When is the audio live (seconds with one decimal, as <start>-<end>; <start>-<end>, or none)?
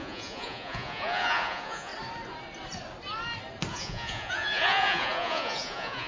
1.9-3.7